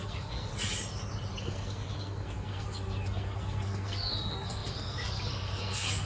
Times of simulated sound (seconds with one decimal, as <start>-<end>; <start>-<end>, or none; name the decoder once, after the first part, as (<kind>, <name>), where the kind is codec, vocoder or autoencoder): 0.0-0.5 (codec, SNAC); 1.4-6.1